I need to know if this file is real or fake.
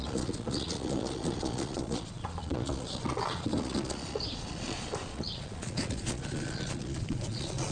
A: fake